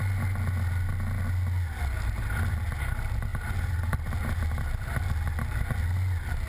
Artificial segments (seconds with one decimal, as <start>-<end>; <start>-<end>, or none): 3.3-4.7